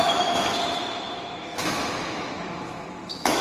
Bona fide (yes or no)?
no